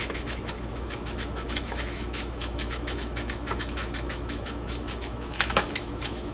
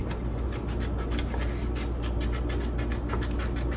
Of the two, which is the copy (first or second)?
first